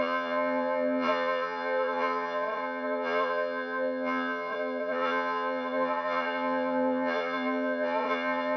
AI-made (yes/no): yes